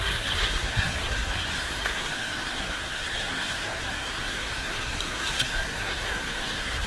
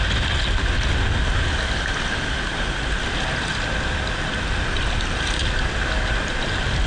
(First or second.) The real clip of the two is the second